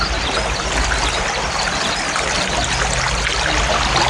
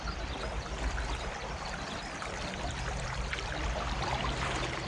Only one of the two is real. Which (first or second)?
first